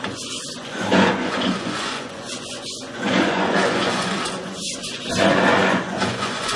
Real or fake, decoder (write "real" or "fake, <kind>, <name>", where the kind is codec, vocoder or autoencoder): fake, vocoder, Vocos